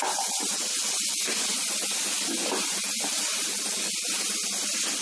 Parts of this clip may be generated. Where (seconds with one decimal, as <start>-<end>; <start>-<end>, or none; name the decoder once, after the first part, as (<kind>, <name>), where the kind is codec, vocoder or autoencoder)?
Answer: none